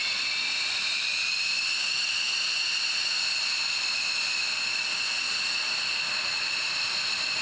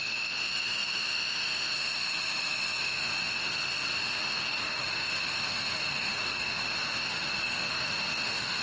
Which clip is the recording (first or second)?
first